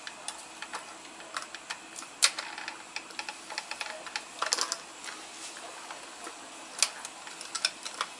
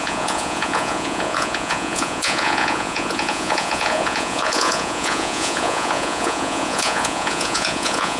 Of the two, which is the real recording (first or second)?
first